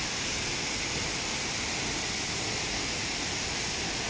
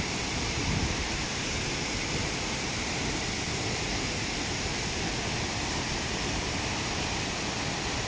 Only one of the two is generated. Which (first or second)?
second